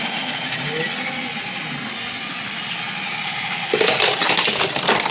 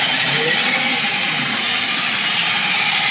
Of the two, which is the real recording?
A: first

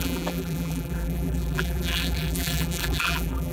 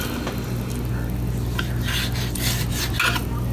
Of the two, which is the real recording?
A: second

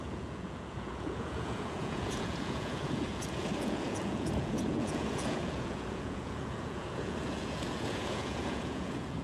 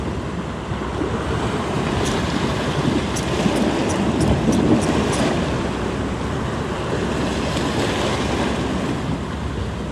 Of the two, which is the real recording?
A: second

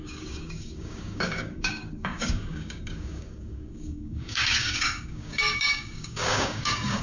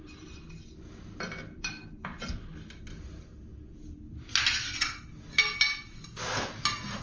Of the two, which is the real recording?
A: second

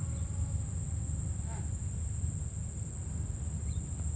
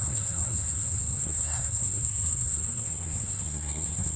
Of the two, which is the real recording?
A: first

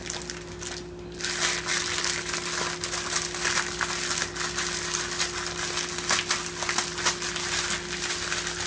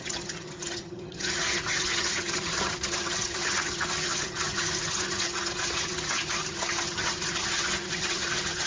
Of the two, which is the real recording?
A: first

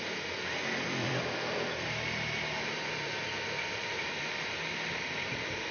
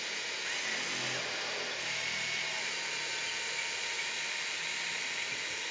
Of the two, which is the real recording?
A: second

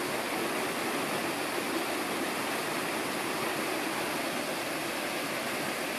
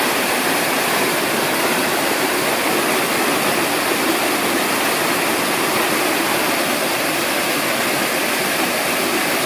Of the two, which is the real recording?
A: first